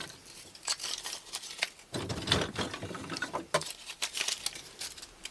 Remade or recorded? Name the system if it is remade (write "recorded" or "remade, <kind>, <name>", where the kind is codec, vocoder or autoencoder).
recorded